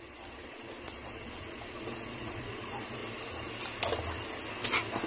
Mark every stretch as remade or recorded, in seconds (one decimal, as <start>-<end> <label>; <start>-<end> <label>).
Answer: 0.0-3.0 remade; 3.0-5.1 recorded